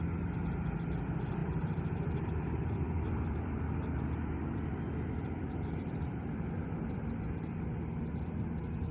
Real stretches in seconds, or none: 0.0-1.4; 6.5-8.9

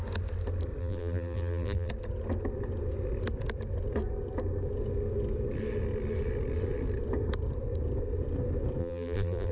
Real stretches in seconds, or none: 0.0-0.8; 1.9-8.8

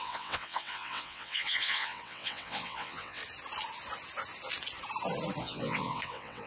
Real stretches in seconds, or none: 3.2-5.4

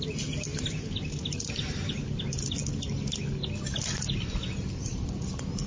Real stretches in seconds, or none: 0.0-5.7

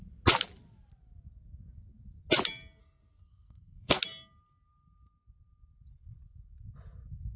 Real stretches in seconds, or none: 0.0-2.8; 4.0-7.4

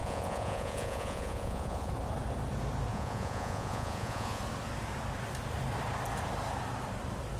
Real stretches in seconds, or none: 1.9-2.9; 4.4-7.4